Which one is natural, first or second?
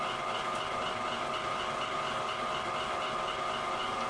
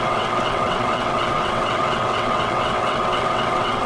first